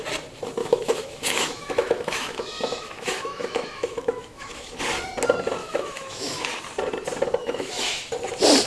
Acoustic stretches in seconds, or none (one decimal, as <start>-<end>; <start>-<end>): 0.0-0.6; 4.8-5.6; 6.5-7.4; 8.1-8.7